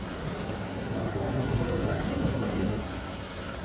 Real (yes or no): no